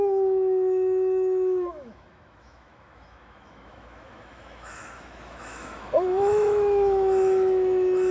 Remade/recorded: remade